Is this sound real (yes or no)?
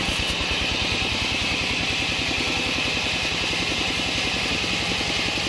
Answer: yes